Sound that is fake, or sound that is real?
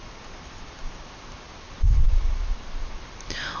real